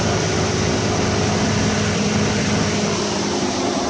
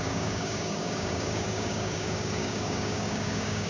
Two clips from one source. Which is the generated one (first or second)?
second